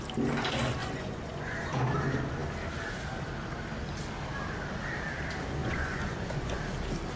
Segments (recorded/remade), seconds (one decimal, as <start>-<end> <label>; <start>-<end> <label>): 0.0-0.8 recorded; 0.8-1.8 remade; 1.8-5.6 recorded; 5.6-6.6 remade; 6.6-7.2 recorded